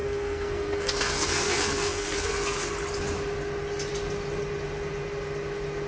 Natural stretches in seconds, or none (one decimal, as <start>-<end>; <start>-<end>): 2.7-5.9